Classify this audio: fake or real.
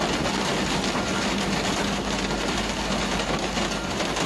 real